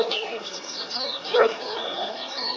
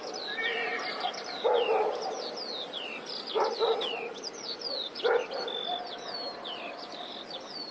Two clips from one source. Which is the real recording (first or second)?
second